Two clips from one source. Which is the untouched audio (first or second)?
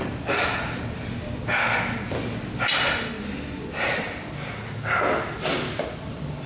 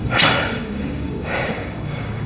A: first